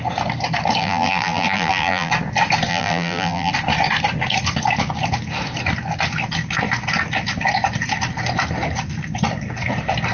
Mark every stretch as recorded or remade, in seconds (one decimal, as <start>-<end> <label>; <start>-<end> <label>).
0.0-0.8 recorded; 0.8-2.1 remade; 2.1-2.7 recorded; 2.7-3.5 remade; 3.5-10.1 recorded